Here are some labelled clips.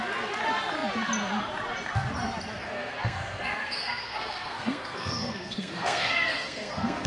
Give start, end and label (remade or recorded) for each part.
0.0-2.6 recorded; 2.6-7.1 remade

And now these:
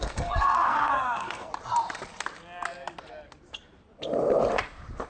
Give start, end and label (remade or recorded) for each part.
0.0-1.5 remade; 1.5-5.1 recorded